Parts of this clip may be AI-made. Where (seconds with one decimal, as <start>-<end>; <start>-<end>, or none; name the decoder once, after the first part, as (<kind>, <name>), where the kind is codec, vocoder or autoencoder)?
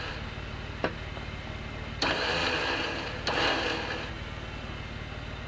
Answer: none